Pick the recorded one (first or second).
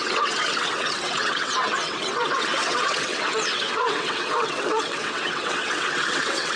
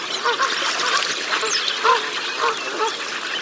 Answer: second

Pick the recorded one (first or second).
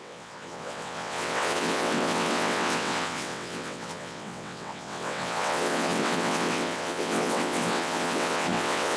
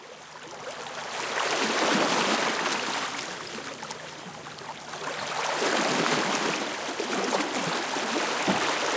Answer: second